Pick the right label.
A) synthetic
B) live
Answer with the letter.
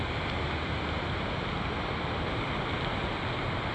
B